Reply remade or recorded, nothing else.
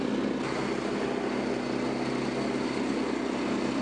recorded